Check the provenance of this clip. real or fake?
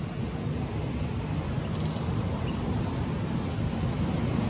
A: real